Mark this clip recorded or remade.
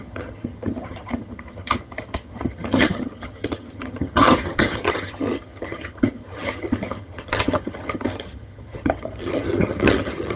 remade